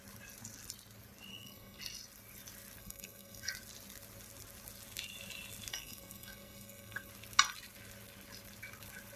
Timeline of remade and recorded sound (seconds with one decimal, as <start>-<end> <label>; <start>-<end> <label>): 0.0-1.3 recorded; 1.3-1.8 remade; 1.8-2.8 recorded; 2.8-3.5 remade; 3.5-5.7 recorded; 5.7-7.1 remade; 7.1-9.2 recorded